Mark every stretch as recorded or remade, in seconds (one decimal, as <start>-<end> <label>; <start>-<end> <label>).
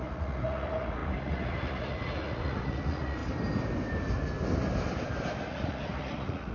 0.0-3.2 remade; 3.2-5.4 recorded; 5.4-6.5 remade